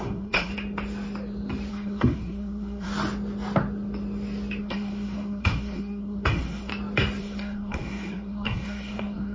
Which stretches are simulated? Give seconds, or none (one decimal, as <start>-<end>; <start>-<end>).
0.0-0.5; 1.7-2.9; 4.6-6.7; 7.2-9.3